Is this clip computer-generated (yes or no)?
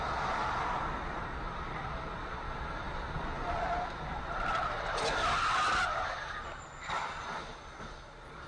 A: no